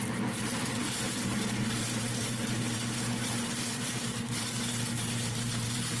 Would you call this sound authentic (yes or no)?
no